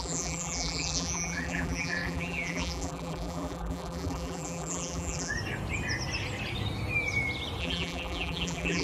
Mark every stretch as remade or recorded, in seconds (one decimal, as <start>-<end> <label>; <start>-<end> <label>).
0.0-5.3 remade; 5.3-7.6 recorded; 7.6-8.8 remade